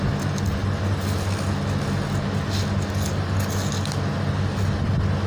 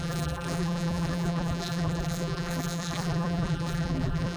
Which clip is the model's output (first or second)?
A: second